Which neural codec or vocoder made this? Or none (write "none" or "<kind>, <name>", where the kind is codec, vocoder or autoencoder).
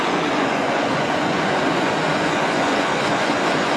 vocoder, Vocos